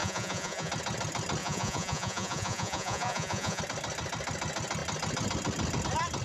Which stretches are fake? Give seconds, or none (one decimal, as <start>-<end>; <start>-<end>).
0.0-0.7; 1.4-3.6